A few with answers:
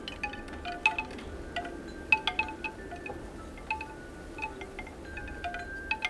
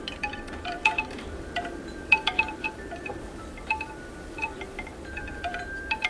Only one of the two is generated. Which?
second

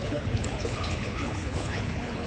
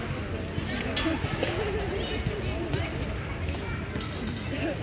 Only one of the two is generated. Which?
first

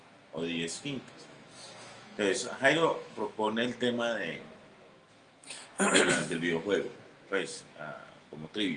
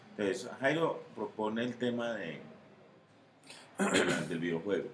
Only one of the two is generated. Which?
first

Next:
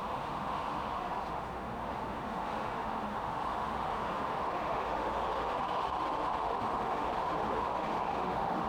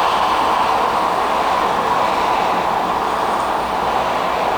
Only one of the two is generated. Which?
first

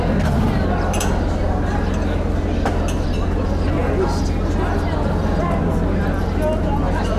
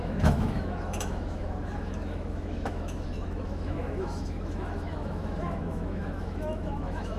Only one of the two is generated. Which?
second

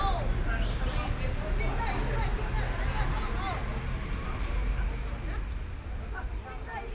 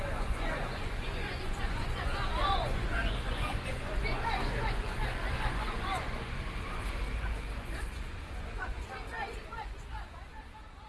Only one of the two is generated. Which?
second